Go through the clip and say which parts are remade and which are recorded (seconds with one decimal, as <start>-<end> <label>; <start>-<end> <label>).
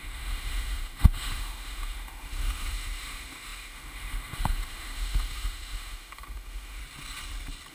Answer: 0.0-6.8 remade; 6.8-7.7 recorded